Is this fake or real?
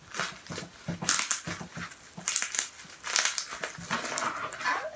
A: real